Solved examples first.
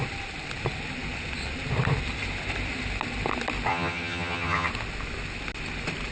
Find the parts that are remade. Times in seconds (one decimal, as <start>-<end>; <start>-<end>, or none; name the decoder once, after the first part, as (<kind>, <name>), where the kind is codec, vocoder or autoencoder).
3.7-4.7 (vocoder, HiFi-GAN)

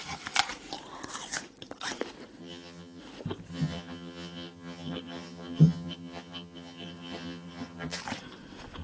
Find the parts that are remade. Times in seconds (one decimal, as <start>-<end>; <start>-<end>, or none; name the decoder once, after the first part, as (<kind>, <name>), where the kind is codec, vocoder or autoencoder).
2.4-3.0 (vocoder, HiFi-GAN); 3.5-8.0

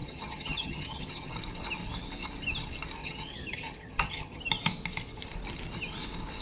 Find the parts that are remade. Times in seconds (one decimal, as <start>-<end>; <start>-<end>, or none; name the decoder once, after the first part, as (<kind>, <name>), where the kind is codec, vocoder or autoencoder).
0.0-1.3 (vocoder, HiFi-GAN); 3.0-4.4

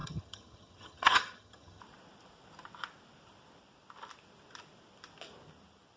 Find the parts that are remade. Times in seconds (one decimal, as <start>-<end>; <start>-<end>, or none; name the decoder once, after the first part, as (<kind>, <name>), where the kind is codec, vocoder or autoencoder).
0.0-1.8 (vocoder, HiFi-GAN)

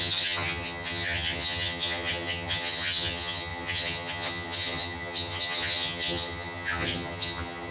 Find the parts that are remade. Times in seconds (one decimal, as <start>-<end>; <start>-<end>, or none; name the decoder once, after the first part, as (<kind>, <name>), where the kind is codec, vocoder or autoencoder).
0.0-7.7 (vocoder, HiFi-GAN)

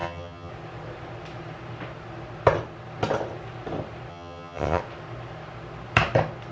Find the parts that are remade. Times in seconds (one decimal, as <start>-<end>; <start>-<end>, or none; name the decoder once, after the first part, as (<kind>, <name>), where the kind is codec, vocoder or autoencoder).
0.0-0.5 (vocoder, HiFi-GAN); 4.1-4.8

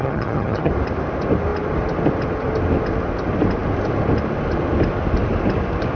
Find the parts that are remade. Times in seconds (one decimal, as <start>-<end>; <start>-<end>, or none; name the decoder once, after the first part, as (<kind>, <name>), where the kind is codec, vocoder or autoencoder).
0.0-0.7 (vocoder, HiFi-GAN)